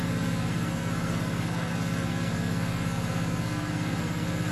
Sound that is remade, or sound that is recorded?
remade